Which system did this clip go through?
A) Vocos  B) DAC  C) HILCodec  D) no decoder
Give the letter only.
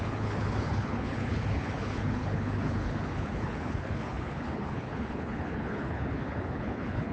C